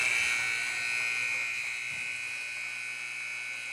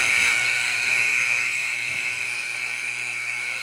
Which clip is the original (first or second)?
first